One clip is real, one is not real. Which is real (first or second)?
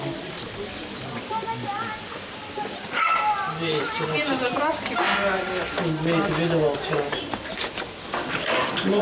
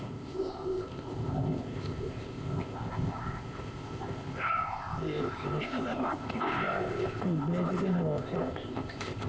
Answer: first